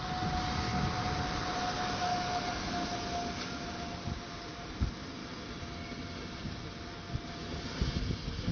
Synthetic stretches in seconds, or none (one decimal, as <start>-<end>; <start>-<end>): none